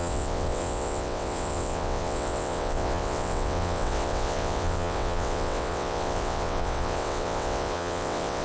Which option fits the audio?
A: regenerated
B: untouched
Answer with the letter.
A